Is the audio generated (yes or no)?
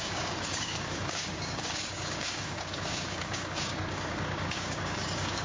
yes